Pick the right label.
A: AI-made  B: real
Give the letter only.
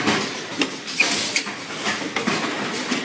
B